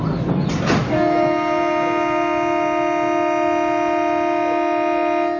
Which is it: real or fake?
real